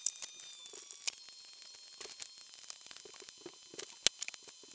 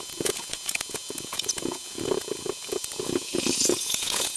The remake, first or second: second